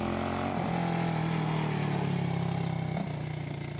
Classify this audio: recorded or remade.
recorded